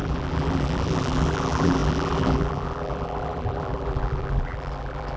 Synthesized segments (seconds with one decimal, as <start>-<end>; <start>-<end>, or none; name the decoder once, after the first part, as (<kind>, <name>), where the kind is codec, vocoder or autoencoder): 0.0-5.2 (vocoder, BigVGAN v2)